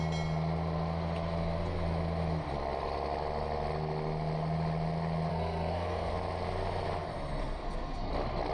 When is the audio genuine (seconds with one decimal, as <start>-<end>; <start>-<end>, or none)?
0.0-5.3; 6.1-7.4; 8.1-8.5

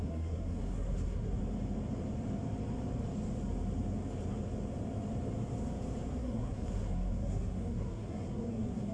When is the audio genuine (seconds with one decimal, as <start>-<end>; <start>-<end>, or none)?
1.4-6.2

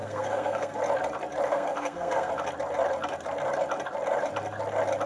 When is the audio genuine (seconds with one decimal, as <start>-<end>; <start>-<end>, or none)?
0.8-1.5; 2.3-5.1

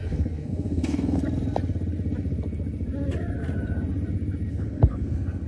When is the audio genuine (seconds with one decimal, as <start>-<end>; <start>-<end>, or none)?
1.2-4.5